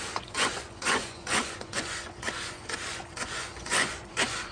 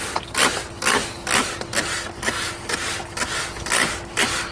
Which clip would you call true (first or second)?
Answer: second